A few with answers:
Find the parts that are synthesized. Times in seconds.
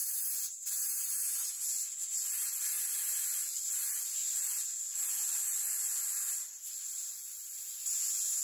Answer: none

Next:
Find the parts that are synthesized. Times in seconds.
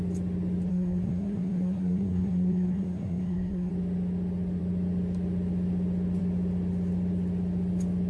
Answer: 0.7-3.7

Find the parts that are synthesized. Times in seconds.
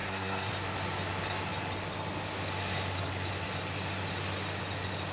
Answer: 0.0-0.5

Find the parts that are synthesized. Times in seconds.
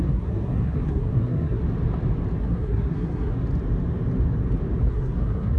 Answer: 0.0-1.6; 2.4-3.3; 4.8-5.6